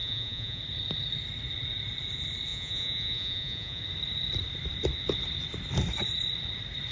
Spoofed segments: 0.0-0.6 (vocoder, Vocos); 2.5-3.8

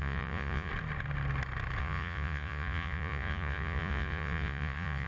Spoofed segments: 0.0-0.7 (vocoder, Vocos); 1.8-5.1

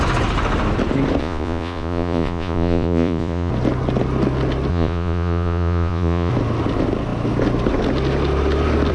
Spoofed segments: 1.2-3.5 (vocoder, Vocos); 4.7-6.3

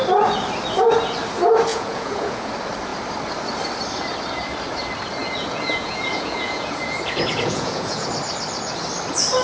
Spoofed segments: 1.7-2.5 (vocoder, Vocos); 5.2-8.1

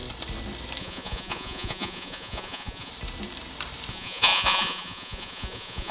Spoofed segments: 0.8-2.9 (vocoder, Vocos); 3.9-5.9

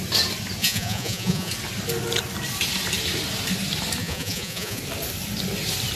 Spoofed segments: 0.6-1.5 (vocoder, Vocos); 4.0-4.8

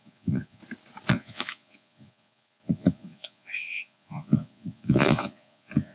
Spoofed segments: 0.0-0.6 (vocoder, Vocos); 1.1-5.9

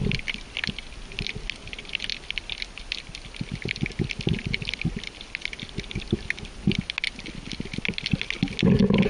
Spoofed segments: none